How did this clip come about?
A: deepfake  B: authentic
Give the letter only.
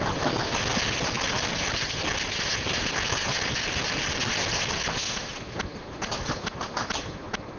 B